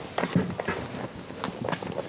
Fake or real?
real